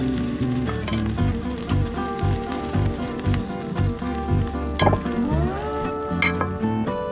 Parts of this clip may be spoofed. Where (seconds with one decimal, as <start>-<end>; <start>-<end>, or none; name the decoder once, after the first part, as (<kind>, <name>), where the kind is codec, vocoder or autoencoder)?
0.0-3.4 (vocoder, BigVGAN v2)